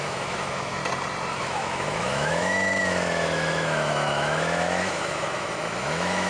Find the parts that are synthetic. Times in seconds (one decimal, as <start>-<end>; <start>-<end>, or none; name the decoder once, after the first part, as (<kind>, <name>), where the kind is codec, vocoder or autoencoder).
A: 0.0-0.8 (autoencoder, DAC-VAE); 1.4-6.3